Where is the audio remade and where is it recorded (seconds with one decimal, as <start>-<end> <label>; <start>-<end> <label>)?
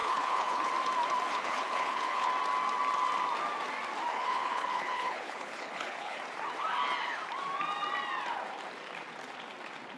0.0-0.7 remade; 0.7-1.3 recorded; 1.3-2.3 remade; 2.3-4.1 recorded; 4.1-6.2 remade; 6.2-10.0 recorded